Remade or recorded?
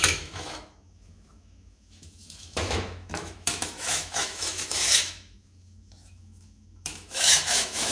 remade